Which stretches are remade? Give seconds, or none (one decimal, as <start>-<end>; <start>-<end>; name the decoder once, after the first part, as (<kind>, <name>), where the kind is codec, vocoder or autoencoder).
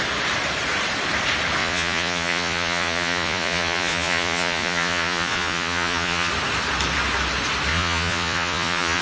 1.6-6.3 (vocoder, Vocos); 7.7-9.0